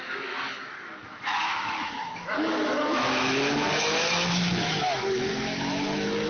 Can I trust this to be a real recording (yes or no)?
no